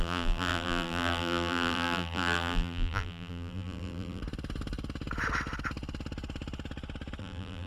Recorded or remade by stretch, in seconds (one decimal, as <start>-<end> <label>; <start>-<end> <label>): 0.0-4.2 remade; 4.2-7.2 recorded; 7.2-7.7 remade